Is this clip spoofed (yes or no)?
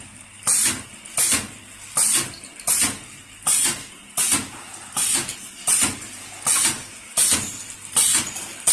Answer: no